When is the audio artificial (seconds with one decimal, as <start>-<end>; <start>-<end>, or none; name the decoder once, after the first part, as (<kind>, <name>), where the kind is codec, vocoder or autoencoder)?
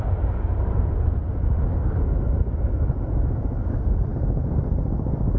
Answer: none